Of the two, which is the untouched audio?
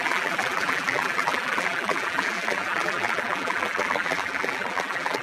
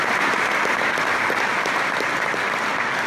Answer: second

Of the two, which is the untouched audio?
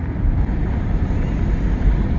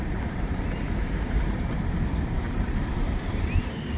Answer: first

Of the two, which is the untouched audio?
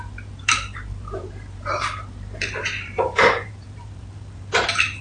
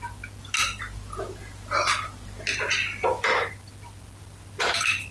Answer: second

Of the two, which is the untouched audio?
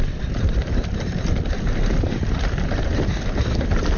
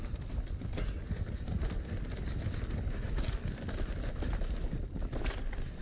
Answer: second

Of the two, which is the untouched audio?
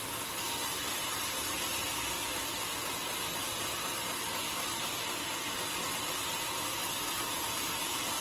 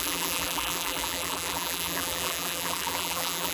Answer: first